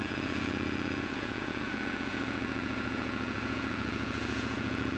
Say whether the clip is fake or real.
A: fake